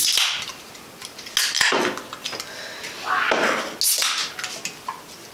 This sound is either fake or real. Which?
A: real